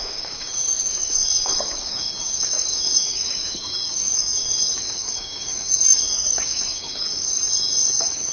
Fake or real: fake